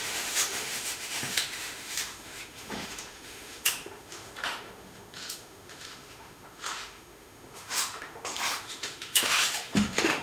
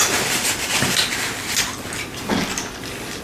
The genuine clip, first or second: second